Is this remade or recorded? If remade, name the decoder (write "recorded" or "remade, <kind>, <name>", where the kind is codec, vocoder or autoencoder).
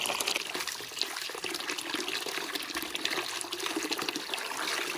recorded